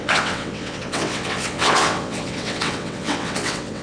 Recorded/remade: remade